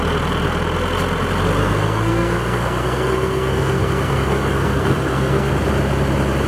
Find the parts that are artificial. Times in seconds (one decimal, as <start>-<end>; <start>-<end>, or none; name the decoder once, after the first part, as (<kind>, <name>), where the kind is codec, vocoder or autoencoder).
1.6-5.5 (codec, SNAC)